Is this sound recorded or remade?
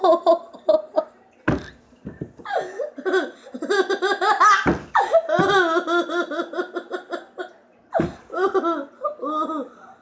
recorded